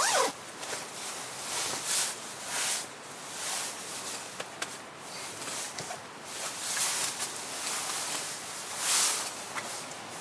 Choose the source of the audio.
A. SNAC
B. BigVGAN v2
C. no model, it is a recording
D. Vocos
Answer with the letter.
C